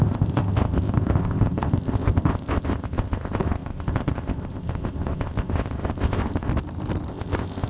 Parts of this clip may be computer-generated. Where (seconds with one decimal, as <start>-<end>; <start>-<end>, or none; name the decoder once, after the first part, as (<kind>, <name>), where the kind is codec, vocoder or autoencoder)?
0.0-6.5 (codec, ZipCodec); 7.1-7.7